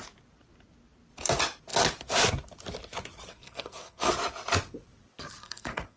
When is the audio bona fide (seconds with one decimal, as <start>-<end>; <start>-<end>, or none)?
0.0-3.3; 4.1-5.4